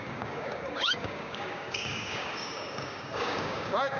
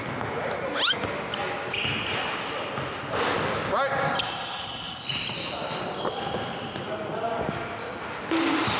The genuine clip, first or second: second